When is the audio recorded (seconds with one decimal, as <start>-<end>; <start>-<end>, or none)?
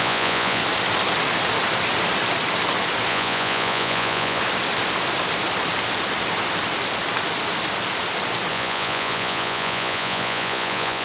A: 0.6-3.1; 4.4-8.5